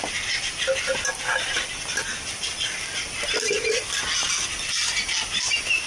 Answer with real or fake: real